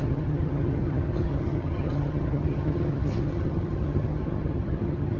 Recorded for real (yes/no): no